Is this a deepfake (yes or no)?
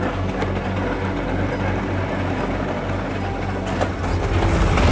no